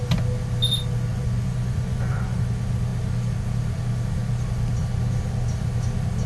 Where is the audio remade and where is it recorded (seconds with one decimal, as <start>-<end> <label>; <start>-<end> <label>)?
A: 0.0-1.1 recorded; 1.1-2.4 remade; 2.4-6.3 recorded